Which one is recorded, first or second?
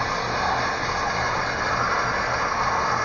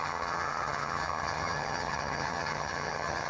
first